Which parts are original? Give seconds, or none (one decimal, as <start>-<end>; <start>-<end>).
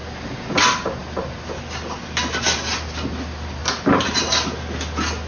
0.0-5.3